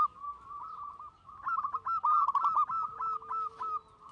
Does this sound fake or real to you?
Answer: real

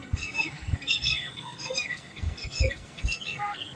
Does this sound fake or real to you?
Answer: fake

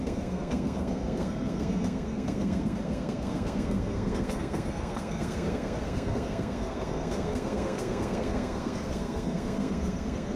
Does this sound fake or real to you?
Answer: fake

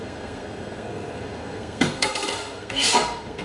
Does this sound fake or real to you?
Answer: fake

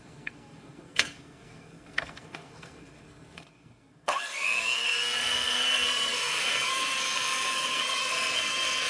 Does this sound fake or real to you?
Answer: fake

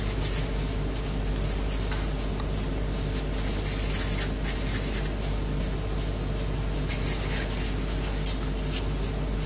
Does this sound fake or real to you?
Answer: real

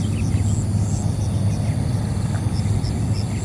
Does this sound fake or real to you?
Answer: real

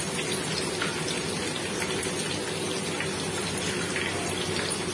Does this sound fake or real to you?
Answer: real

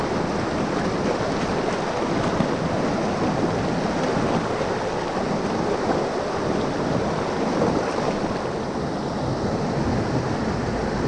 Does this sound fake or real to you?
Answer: real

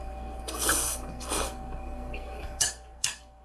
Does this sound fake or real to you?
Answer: fake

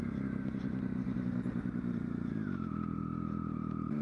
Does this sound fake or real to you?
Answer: real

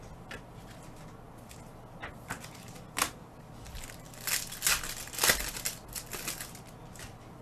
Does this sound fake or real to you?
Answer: real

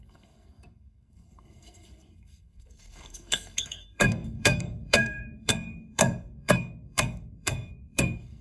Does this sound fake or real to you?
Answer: fake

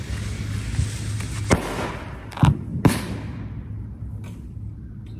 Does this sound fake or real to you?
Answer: real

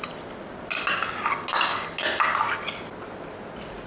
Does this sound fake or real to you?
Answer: real